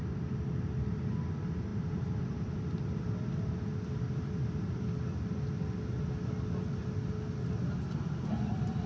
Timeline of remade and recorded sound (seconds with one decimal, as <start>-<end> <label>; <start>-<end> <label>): 0.0-8.9 recorded